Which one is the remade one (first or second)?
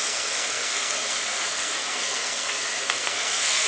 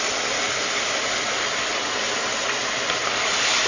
first